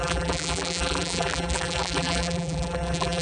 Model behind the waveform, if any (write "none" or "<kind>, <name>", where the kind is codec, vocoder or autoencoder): vocoder, BigVGAN v2